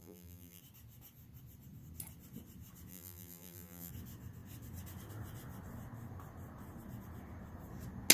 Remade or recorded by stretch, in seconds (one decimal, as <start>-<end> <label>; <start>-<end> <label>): 0.0-0.6 remade; 0.6-2.9 recorded; 2.9-3.9 remade; 3.9-8.1 recorded